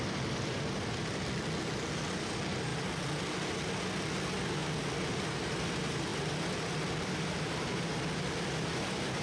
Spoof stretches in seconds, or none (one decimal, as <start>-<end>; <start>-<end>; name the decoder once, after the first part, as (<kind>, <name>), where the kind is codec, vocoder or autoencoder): 2.7-3.7 (vocoder, BigVGAN v2); 4.6-5.2; 6.1-7.3